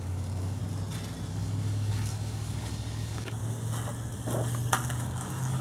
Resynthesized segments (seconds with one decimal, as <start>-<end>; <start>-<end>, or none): 0.0-0.6; 1.3-3.4; 5.0-5.6